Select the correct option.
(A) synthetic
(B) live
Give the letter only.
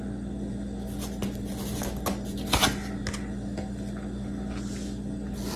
B